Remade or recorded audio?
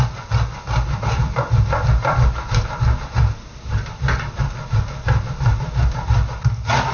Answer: recorded